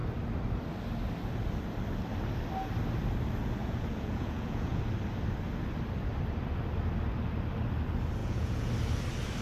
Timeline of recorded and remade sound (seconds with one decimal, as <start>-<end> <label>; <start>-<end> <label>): 0.0-3.6 recorded; 3.6-4.8 remade; 4.8-8.2 recorded; 8.2-8.7 remade; 8.7-9.4 recorded